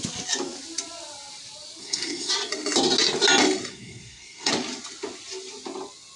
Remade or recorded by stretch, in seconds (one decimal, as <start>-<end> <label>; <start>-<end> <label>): 0.0-1.8 recorded; 1.8-2.3 remade; 2.3-3.7 recorded; 3.7-4.5 remade; 4.5-6.2 recorded